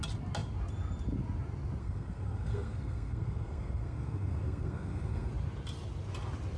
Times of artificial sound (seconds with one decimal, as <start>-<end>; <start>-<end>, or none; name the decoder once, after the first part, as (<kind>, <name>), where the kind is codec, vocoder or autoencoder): 1.8-5.3 (codec, SNAC)